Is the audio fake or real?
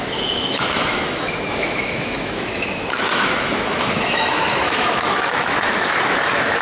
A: fake